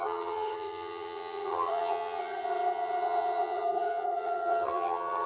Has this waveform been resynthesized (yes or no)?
yes